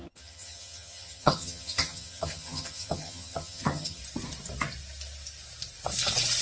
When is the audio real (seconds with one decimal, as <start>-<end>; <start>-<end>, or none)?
4.0-6.4